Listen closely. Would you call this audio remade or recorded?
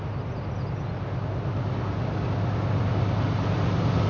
recorded